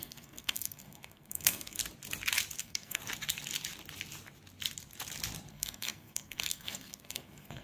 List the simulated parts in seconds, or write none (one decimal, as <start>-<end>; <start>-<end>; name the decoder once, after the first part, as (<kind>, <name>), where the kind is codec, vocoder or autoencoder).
0.0-1.8 (codec, SNAC); 2.6-3.0; 5.5-7.6